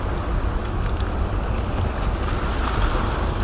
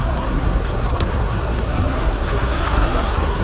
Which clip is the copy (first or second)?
second